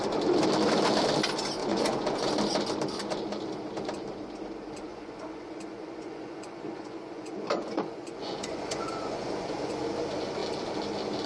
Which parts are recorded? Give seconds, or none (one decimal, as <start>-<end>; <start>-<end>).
0.0-1.6; 2.3-4.9; 9.8-11.3